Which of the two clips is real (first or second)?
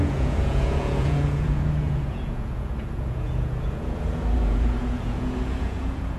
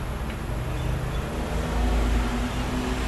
second